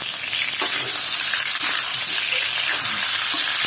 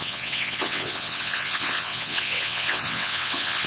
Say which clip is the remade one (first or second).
second